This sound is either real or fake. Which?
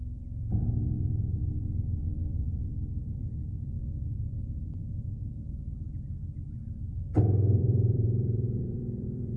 fake